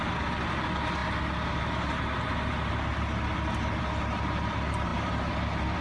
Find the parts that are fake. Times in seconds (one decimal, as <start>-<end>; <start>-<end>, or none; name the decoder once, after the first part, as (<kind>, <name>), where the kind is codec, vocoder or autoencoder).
none